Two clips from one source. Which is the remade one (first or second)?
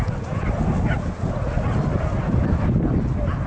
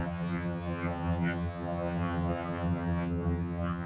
second